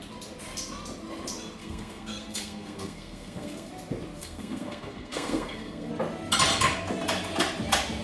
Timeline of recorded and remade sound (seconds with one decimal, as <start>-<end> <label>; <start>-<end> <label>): 0.0-1.6 recorded; 1.6-3.7 remade; 3.7-4.2 recorded; 4.2-5.9 remade; 5.9-8.0 recorded